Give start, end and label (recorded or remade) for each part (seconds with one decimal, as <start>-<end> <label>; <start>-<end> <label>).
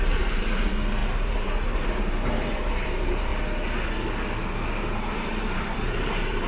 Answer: 0.0-3.3 remade; 3.3-4.9 recorded; 4.9-6.5 remade